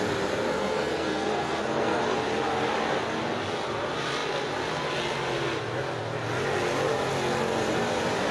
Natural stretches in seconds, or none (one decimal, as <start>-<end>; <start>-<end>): 0.0-0.5; 2.0-8.3